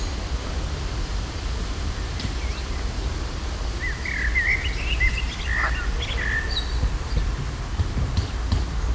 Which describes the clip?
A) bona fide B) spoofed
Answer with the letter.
A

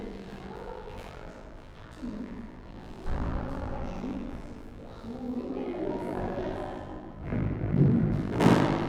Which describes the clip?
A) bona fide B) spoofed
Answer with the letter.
B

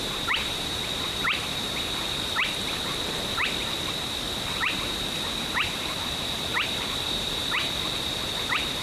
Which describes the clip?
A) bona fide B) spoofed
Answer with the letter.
B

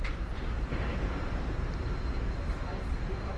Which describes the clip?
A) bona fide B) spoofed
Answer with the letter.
B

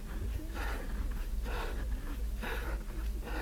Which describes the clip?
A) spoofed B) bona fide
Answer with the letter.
B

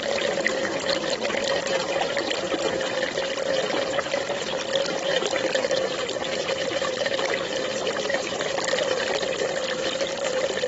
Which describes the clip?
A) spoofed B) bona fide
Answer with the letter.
B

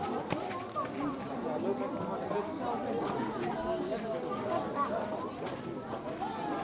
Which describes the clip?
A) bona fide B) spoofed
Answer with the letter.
A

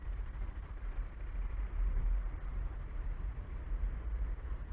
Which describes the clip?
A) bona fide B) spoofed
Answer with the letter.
B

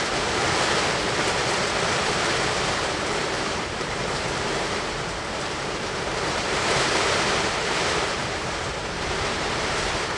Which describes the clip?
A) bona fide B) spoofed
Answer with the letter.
B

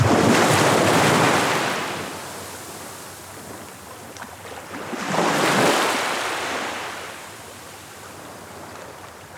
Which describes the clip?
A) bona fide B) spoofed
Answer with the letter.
A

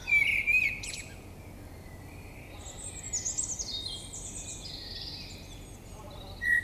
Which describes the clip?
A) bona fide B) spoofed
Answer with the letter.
A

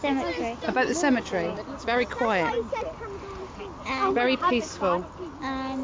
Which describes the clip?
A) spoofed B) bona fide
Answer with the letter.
B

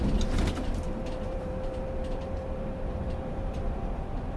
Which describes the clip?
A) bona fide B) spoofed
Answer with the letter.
B